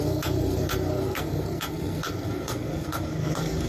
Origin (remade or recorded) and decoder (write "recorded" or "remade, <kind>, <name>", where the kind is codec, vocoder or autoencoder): remade, codec, SNAC